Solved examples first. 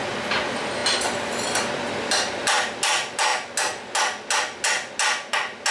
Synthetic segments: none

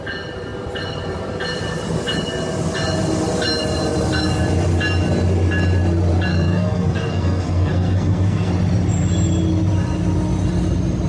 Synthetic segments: 6.3-8.5

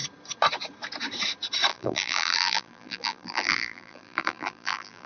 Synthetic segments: 1.7-5.1

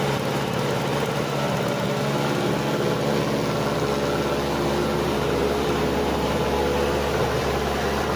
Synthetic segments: 0.0-0.9; 5.0-6.6; 7.2-8.2

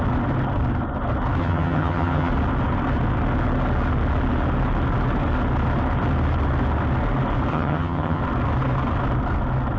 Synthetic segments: 1.4-2.3; 7.5-8.2

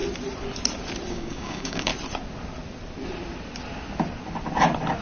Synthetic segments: 1.1-1.9